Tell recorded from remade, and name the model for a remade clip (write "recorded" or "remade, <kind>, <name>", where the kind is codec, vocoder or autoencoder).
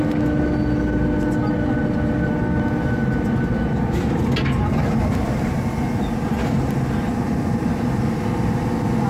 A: recorded